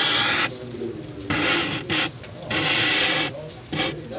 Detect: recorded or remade recorded